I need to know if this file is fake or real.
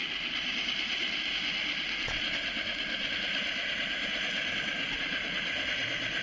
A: real